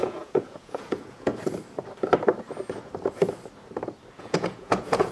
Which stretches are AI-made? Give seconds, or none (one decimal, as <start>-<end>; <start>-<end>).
0.0-1.3; 4.2-5.1